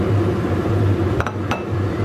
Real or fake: fake